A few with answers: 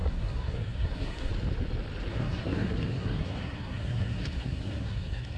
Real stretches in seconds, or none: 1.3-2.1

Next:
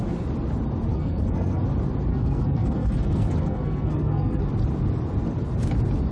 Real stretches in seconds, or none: 0.0-0.9; 1.6-2.1; 4.4-6.1

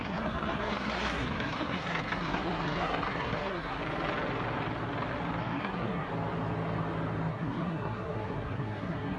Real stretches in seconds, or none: 3.8-5.4; 6.1-7.3

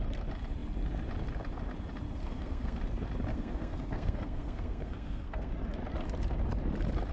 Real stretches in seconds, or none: 0.0-2.2; 2.8-3.3; 5.5-7.1

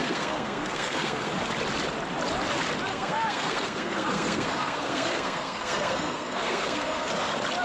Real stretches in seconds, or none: 1.3-2.9; 7.1-7.6